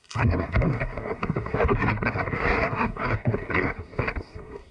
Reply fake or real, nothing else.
fake